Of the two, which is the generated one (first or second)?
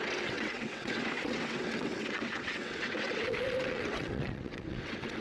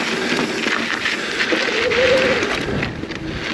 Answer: first